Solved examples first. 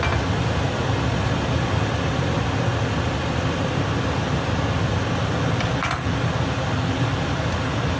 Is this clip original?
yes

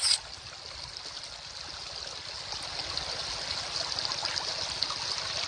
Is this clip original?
yes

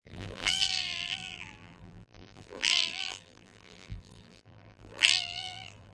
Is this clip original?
no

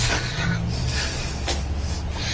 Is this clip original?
yes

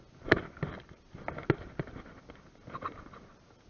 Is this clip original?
yes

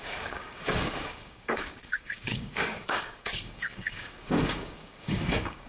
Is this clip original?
no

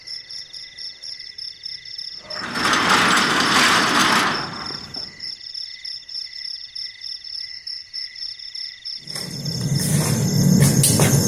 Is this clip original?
yes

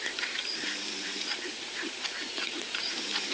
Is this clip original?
no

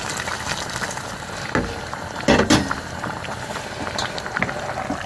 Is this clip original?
yes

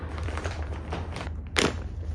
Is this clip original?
no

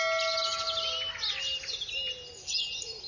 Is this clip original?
yes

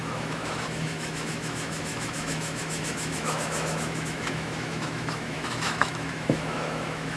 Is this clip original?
no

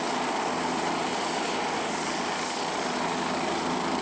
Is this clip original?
yes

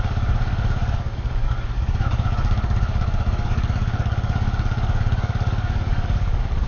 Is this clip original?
no